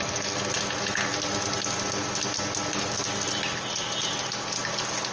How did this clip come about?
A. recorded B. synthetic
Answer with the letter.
A